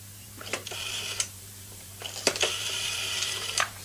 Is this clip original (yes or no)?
no